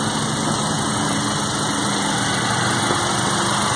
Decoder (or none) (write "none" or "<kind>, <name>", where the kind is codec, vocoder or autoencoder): none